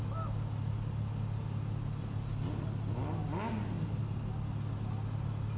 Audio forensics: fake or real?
real